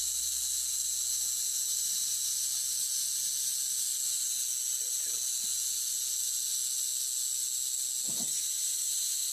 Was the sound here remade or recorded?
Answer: recorded